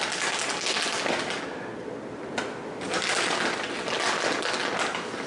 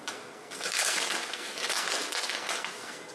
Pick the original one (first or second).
first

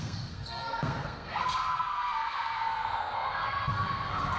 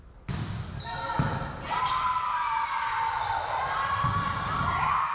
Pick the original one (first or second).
second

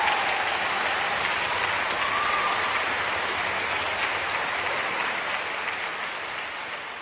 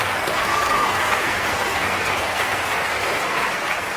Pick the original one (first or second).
first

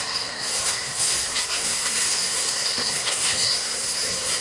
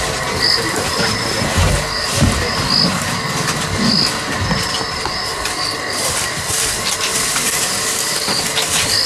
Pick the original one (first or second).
second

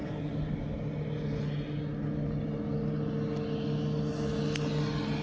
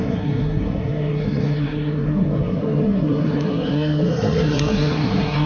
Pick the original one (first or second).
first